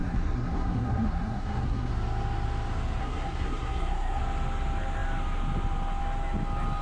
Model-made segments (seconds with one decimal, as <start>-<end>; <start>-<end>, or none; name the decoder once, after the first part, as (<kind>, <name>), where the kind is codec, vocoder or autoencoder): 0.0-1.9 (codec, SNAC); 3.0-4.2